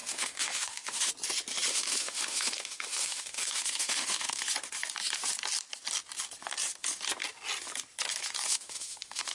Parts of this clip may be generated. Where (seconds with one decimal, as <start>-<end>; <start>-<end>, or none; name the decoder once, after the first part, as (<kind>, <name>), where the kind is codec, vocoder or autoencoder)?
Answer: 0.0-1.1 (autoencoder, DAC-VAE); 1.7-4.4; 8.5-9.3